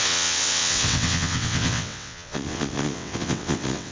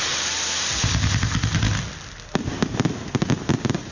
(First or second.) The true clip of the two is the second